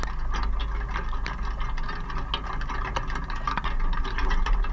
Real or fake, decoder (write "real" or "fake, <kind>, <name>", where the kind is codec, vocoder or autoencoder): real